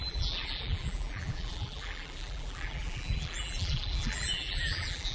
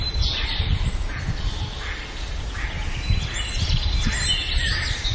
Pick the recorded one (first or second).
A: second